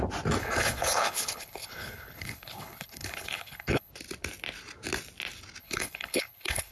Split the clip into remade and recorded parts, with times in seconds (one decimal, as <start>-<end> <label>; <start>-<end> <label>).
0.0-0.4 recorded; 0.4-3.9 remade; 3.9-5.6 recorded; 5.6-6.7 remade